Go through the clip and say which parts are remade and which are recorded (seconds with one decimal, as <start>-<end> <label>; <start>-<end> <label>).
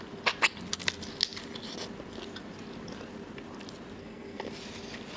0.0-4.0 recorded; 4.0-4.5 remade; 4.5-5.2 recorded